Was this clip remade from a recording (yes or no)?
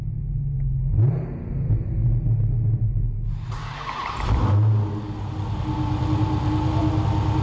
no